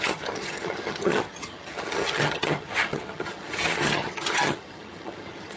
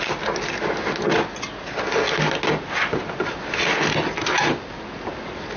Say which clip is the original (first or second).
second